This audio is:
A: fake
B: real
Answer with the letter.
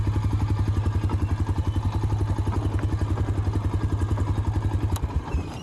B